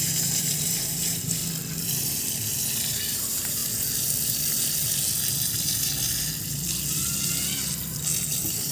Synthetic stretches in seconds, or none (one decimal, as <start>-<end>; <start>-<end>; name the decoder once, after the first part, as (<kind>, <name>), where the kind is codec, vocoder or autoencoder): 0.0-1.4 (vocoder, BigVGAN v2); 2.9-3.6